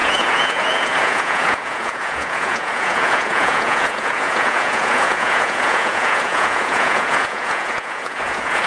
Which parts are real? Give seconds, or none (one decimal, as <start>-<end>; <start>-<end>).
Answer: none